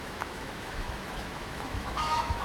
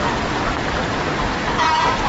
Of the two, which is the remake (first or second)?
first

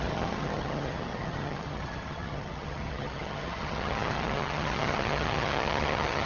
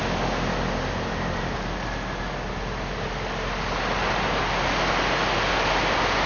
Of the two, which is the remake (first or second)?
first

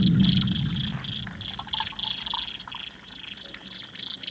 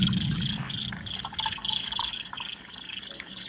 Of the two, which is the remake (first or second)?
second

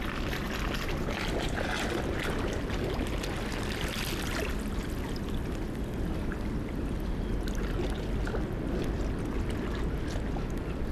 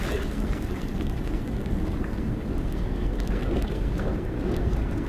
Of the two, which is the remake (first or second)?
second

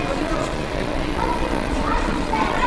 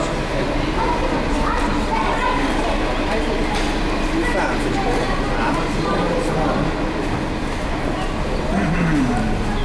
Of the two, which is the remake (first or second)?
first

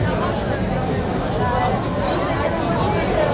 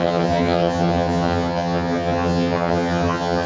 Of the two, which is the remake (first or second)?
second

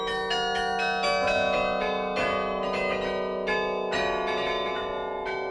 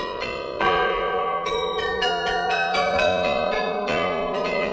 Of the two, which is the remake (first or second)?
second